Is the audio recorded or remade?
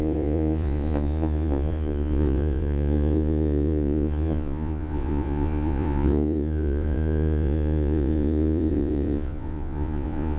remade